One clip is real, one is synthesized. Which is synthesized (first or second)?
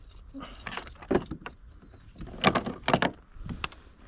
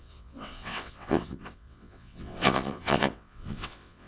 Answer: second